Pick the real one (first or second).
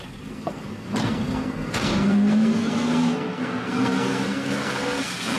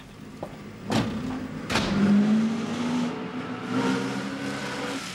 second